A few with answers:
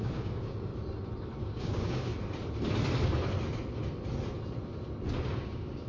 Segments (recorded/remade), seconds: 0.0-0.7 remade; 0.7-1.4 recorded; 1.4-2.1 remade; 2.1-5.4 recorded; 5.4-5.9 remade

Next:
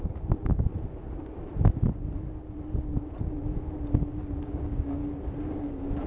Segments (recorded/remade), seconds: 0.0-0.7 remade; 0.7-4.4 recorded; 4.4-5.0 remade; 5.0-5.5 recorded; 5.5-6.1 remade

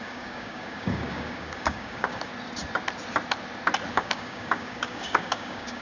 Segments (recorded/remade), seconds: 0.0-2.3 remade; 2.3-3.9 recorded; 3.9-5.8 remade

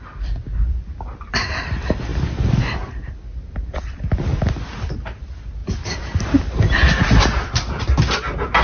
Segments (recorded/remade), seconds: 0.0-8.6 recorded

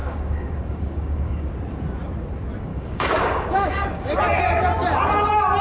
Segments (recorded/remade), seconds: 0.0-1.5 remade; 1.5-2.7 recorded; 2.7-4.2 remade; 4.2-5.6 recorded

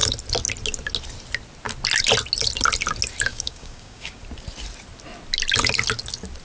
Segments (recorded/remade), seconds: 0.0-3.3 recorded; 3.3-4.2 remade; 4.2-6.4 recorded

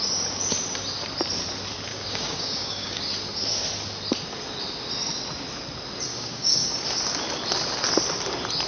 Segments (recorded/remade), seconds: 0.0-1.9 recorded; 1.9-3.0 remade; 3.0-6.1 recorded; 6.1-6.7 remade; 6.7-8.7 recorded

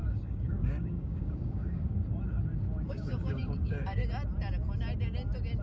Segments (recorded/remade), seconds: 0.0-2.0 remade; 2.0-2.9 recorded; 2.9-4.0 remade; 4.0-5.6 recorded